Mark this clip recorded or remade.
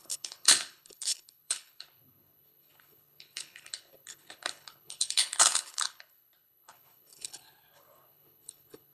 remade